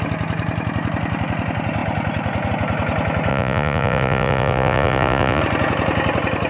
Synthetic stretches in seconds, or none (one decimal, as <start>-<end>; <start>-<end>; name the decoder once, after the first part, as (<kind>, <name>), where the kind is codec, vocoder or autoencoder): 3.3-5.4 (vocoder, Vocos)